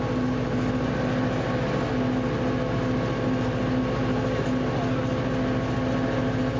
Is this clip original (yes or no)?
yes